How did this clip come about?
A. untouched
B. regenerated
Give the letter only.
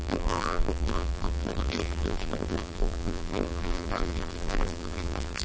B